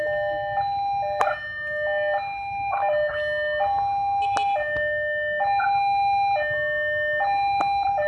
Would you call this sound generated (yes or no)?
no